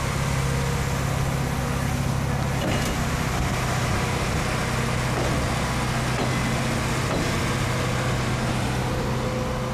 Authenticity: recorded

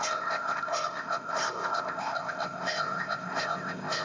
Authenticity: remade